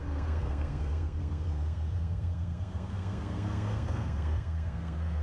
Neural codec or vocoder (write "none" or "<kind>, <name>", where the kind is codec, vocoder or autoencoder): codec, SNAC